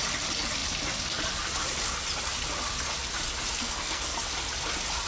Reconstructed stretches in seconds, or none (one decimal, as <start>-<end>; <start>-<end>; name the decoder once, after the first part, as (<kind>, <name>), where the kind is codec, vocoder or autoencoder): 3.6-4.2 (codec, SNAC)

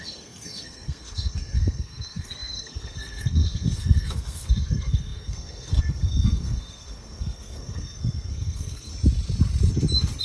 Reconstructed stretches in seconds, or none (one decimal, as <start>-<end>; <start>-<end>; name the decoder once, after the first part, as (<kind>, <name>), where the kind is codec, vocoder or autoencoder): 0.0-8.9 (codec, SNAC)

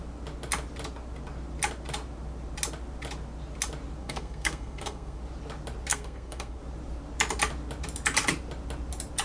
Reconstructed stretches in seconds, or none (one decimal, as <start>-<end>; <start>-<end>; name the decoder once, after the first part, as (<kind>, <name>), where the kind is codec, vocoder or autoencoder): 4.0-5.2 (codec, SNAC); 5.9-6.6

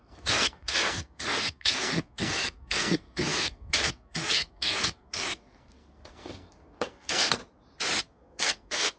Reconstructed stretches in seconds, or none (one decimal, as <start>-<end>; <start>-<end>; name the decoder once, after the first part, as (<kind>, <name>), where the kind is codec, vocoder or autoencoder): 0.0-7.4 (codec, SNAC); 8.0-9.0

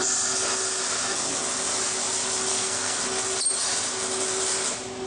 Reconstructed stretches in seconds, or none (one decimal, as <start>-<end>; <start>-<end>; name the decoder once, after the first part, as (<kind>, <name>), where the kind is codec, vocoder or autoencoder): 2.5-3.0 (codec, SNAC)